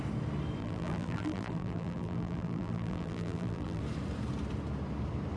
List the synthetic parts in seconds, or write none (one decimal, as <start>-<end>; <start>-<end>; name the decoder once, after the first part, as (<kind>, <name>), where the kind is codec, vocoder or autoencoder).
0.6-3.8 (vocoder, BigVGAN v2)